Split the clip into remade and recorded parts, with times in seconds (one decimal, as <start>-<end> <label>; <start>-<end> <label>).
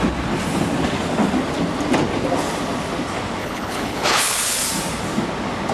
0.0-3.4 recorded; 3.4-4.6 remade; 4.6-5.7 recorded